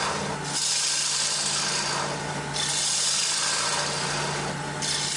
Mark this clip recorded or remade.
recorded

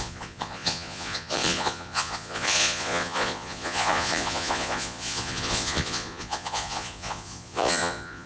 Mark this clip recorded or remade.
remade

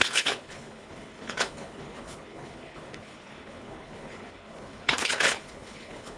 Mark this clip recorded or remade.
remade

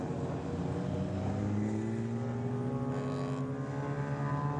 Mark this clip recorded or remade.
recorded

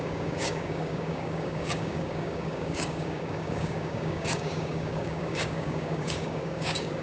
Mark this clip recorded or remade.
remade